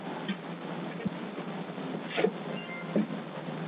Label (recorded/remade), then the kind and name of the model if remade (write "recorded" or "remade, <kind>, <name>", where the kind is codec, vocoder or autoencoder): recorded